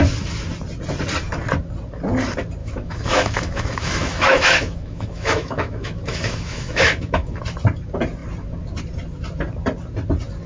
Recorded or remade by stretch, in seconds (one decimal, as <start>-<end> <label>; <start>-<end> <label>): 0.0-2.6 recorded; 2.6-7.4 remade; 7.4-10.5 recorded